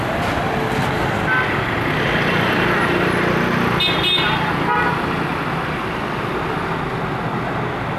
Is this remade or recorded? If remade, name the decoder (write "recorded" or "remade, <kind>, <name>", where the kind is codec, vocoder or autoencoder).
recorded